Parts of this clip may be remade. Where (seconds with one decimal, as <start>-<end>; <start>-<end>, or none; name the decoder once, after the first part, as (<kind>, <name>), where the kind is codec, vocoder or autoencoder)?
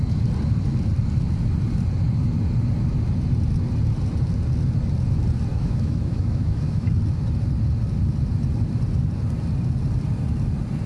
5.5-6.9 (autoencoder, DAC-VAE)